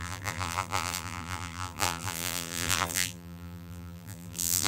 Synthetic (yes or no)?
yes